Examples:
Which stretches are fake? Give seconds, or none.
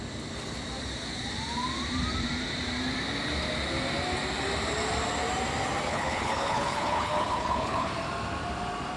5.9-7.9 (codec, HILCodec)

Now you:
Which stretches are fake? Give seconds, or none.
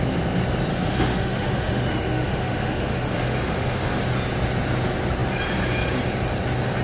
0.7-4.0 (autoencoder, DAC-VAE)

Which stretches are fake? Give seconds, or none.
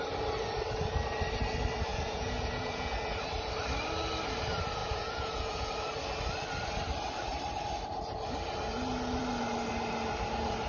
1.9-2.9 (vocoder, Vocos); 4.8-5.7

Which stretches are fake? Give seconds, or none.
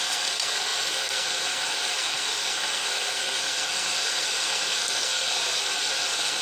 0.0-6.4 (codec, SNAC)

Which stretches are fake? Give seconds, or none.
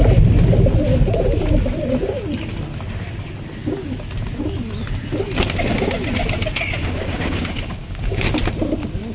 6.8-8.2 (codec, DAC)